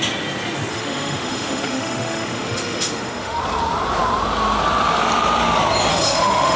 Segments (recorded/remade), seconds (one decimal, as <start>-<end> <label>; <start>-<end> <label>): 0.0-0.7 recorded; 0.7-3.4 remade; 3.4-5.9 recorded; 5.9-6.6 remade